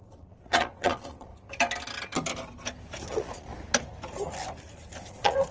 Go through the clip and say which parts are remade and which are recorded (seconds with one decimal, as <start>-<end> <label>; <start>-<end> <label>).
0.0-1.3 remade; 1.3-3.1 recorded; 3.1-3.5 remade; 3.5-5.0 recorded; 5.0-5.5 remade